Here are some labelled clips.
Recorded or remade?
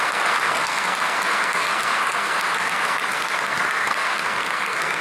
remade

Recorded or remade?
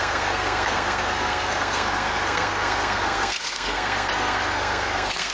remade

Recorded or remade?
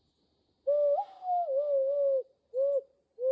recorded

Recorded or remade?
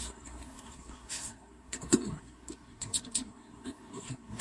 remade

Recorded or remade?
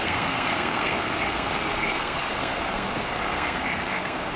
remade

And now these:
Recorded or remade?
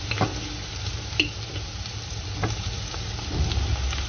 recorded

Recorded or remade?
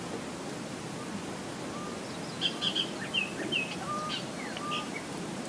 recorded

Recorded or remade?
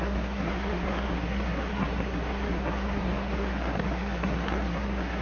remade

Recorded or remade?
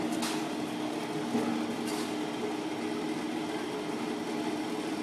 recorded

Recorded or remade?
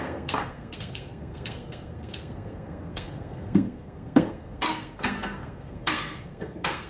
remade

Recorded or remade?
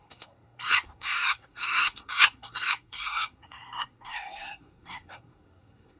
remade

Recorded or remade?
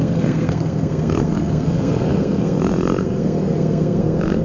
remade